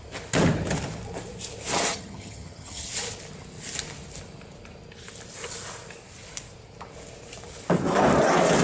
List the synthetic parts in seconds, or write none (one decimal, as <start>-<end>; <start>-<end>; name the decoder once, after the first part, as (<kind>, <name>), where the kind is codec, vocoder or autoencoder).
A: 1.9-2.9 (vocoder, HiFi-GAN)